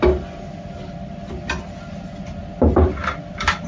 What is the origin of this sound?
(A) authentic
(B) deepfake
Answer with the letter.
A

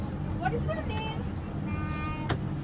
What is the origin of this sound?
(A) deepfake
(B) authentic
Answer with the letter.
B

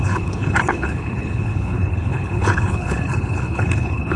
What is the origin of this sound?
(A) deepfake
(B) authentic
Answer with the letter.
A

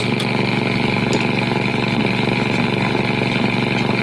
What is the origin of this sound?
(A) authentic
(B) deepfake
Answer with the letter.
A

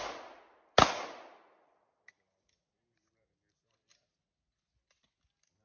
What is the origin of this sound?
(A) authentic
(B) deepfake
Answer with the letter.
A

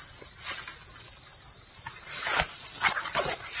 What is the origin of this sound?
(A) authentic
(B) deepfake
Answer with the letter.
A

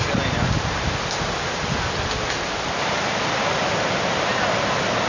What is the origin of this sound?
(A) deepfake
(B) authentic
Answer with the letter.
B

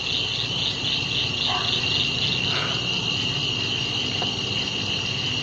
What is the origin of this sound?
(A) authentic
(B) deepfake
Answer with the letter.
A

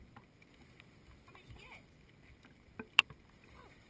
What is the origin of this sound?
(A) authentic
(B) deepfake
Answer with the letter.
A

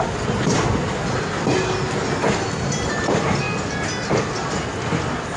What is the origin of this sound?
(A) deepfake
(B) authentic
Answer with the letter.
B